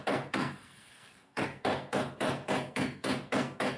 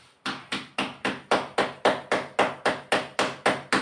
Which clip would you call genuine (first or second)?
second